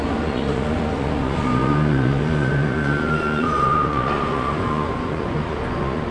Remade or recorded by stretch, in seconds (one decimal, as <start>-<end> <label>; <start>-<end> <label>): 0.0-6.1 remade